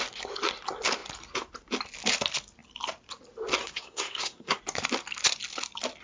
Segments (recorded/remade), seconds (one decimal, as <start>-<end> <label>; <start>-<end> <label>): 0.0-3.6 recorded; 3.6-4.6 remade; 4.6-6.0 recorded